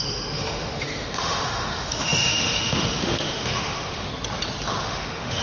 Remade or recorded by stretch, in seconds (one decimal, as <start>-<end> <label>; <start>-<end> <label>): 0.0-4.1 remade; 4.1-4.8 recorded; 4.8-5.4 remade